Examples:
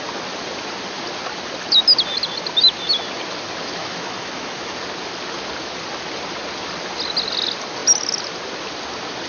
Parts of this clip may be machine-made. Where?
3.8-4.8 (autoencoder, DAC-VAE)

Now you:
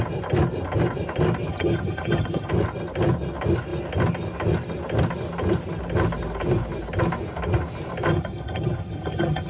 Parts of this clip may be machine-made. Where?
1.5-2.5 (vocoder, HiFi-GAN); 8.1-9.5